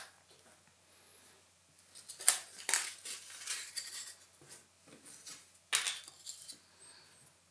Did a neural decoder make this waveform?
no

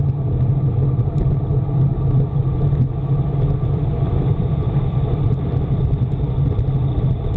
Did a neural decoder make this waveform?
no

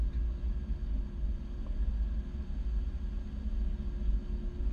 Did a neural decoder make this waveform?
no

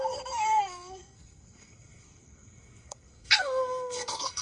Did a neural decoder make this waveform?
yes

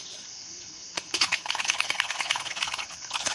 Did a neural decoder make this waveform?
yes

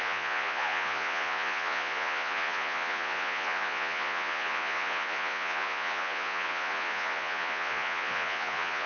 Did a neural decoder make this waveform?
yes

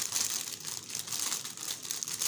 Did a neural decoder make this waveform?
no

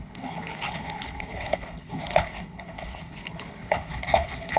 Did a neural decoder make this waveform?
yes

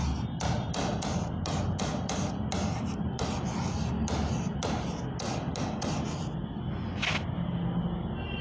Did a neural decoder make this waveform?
no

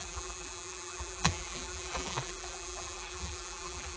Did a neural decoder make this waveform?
yes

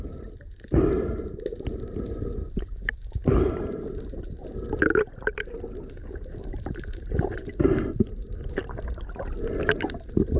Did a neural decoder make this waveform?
yes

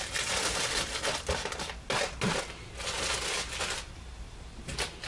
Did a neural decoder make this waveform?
no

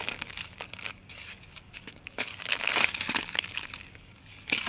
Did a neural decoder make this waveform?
yes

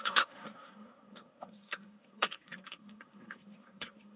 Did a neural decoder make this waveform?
yes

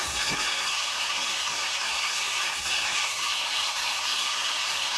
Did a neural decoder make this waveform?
yes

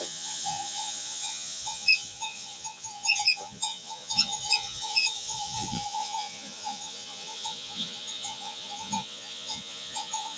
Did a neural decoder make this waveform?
yes